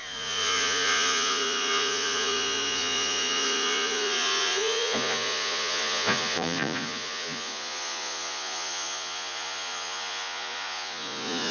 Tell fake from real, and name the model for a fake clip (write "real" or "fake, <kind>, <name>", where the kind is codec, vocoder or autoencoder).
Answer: fake, vocoder, Vocos